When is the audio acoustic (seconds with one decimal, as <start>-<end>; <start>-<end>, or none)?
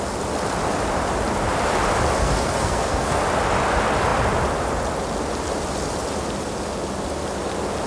0.0-2.2; 3.2-7.9